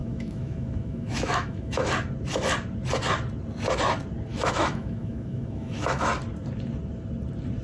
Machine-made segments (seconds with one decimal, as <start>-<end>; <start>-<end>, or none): 0.0-1.9; 4.3-6.1